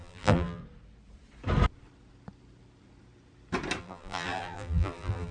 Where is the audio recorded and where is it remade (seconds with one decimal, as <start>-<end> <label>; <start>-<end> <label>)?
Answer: 0.0-0.6 remade; 0.6-3.8 recorded; 3.8-5.3 remade